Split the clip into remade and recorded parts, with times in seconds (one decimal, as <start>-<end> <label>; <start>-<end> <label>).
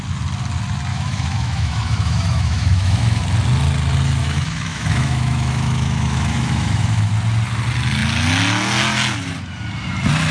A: 0.0-0.9 recorded; 0.9-3.2 remade; 3.2-4.2 recorded; 4.2-7.1 remade; 7.1-10.3 recorded